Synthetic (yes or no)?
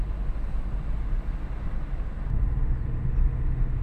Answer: no